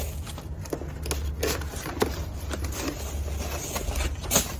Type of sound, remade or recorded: recorded